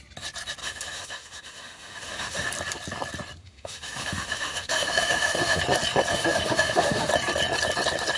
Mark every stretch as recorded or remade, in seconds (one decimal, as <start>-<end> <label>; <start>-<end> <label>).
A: 0.0-0.6 recorded; 0.6-2.5 remade; 2.5-3.4 recorded; 3.4-5.6 remade; 5.6-6.1 recorded; 6.1-7.1 remade; 7.1-8.2 recorded